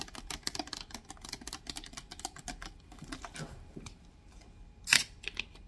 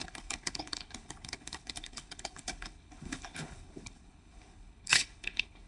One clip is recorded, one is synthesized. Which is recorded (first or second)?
first